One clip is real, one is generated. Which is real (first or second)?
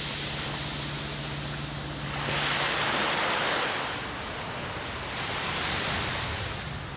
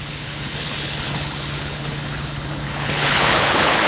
first